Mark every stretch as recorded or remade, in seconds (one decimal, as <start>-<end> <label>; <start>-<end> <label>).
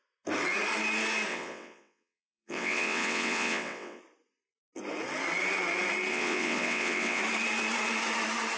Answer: 0.0-1.3 recorded; 1.3-4.0 remade; 4.0-6.1 recorded; 6.1-7.2 remade; 7.2-8.6 recorded